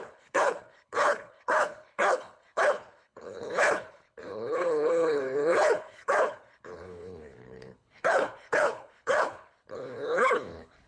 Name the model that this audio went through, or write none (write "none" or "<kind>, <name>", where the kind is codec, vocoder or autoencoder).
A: codec, HILCodec